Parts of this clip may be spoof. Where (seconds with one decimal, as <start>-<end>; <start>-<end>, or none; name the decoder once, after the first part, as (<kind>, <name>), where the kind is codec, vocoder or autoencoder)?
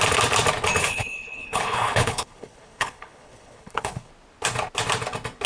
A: 0.8-4.1 (codec, HILCodec)